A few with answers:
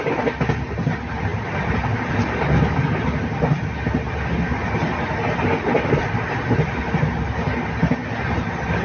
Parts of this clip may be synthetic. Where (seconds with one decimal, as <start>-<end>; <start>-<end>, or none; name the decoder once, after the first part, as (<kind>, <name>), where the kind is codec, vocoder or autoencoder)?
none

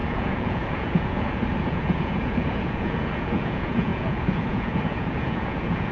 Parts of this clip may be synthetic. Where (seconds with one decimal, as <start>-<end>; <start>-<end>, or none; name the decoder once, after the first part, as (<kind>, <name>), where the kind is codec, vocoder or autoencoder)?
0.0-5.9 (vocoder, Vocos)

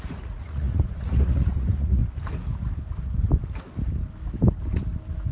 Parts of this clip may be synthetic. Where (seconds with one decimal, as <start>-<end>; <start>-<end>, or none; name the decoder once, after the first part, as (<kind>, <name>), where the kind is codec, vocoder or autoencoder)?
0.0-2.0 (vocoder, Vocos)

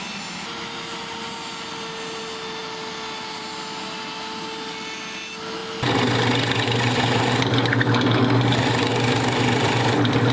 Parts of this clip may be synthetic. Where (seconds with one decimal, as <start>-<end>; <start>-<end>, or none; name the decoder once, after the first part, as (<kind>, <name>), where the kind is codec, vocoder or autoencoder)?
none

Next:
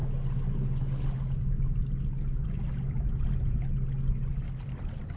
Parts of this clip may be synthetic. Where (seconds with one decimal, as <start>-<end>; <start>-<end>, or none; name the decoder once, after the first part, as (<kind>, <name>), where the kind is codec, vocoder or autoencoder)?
none

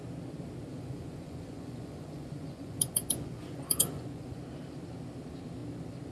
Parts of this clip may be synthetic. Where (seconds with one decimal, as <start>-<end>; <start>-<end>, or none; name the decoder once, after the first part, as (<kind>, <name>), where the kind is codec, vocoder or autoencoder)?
0.7-4.4 (vocoder, Vocos)

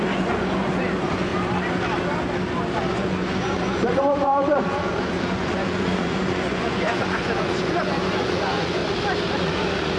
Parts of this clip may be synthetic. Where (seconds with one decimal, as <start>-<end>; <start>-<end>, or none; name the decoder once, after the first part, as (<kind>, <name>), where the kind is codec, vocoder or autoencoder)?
0.0-1.3 (vocoder, Vocos); 2.9-8.8; 9.4-10.0

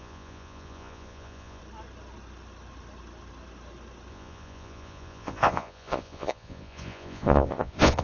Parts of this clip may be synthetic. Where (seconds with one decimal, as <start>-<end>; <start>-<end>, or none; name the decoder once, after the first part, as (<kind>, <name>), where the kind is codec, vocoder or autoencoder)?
0.0-1.6 (vocoder, Vocos); 4.1-8.0